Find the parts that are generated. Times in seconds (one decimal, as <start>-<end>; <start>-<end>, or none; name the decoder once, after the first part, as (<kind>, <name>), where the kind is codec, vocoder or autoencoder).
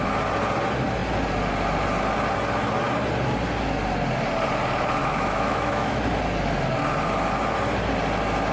5.0-6.0 (autoencoder, DAC-VAE)